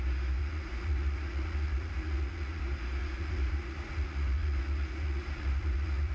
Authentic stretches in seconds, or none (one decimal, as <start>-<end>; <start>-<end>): 0.0-0.4; 2.6-3.0